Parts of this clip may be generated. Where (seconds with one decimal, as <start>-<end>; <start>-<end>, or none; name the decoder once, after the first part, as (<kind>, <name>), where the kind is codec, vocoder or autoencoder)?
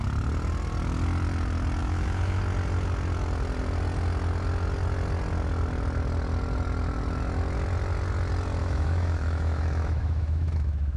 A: 1.8-2.4 (autoencoder, DAC-VAE); 8.6-11.0